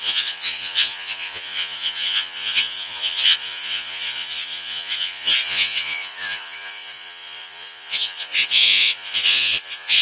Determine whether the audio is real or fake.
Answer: fake